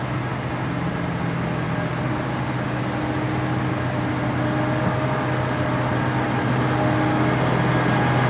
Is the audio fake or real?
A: real